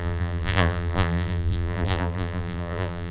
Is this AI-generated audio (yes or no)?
yes